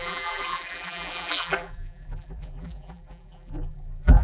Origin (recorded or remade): remade